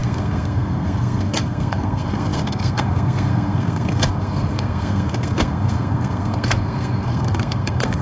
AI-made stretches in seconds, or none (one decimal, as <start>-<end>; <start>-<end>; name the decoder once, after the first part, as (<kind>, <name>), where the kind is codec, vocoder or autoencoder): 0.0-8.0 (codec, SNAC)